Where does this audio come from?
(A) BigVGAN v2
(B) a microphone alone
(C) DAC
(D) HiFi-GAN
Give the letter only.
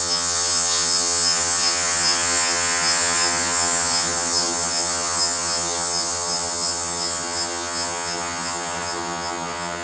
D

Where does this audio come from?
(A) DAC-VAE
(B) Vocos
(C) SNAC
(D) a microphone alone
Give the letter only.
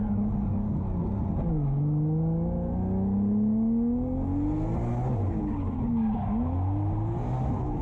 D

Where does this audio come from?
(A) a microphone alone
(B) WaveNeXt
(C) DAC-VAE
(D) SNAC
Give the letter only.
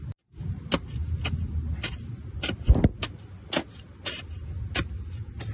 A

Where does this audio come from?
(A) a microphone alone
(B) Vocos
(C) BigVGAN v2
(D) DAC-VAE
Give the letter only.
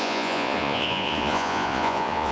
B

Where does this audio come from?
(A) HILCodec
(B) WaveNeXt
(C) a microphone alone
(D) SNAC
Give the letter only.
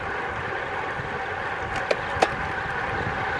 C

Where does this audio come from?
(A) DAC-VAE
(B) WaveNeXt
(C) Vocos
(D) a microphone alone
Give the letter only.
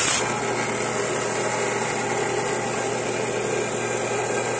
D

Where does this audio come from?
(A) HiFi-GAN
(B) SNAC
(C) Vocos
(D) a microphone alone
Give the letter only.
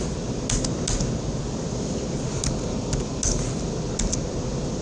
D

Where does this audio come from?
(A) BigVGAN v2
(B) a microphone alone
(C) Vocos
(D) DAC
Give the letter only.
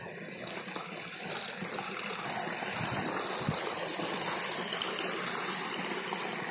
B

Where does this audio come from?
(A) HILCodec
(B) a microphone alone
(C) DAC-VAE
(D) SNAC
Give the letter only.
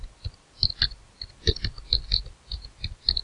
B